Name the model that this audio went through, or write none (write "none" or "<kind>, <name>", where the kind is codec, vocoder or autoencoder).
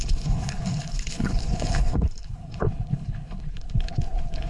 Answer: codec, HILCodec